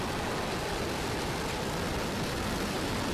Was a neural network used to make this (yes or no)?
no